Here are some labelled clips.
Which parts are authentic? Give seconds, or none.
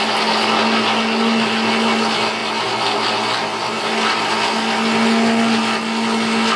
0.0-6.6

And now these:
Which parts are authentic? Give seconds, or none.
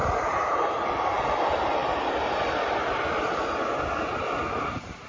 0.9-5.1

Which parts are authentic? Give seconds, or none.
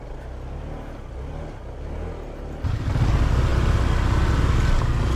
0.0-5.2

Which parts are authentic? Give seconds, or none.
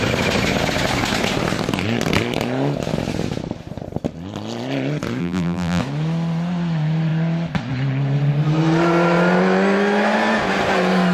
0.0-5.2; 5.8-11.1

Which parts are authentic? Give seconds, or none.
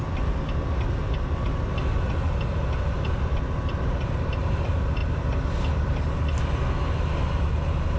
0.0-1.0; 2.3-8.0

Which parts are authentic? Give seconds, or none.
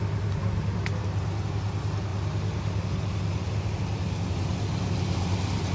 0.0-5.7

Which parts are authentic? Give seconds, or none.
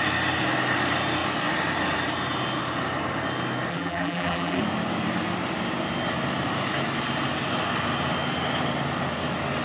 0.0-3.7; 4.6-9.6